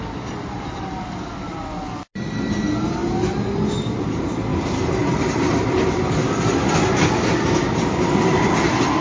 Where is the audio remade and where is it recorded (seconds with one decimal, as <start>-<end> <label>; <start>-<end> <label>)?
0.0-9.0 recorded